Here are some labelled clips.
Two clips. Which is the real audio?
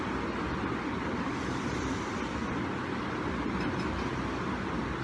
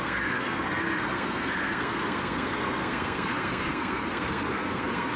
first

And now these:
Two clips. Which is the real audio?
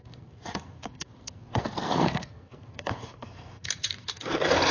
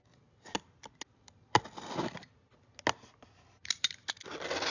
second